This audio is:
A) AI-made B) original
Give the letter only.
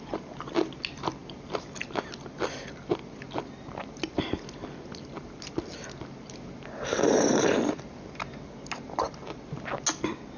B